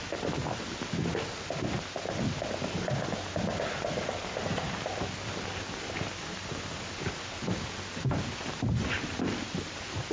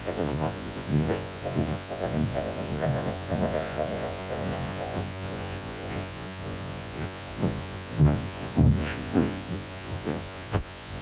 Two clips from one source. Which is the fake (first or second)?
second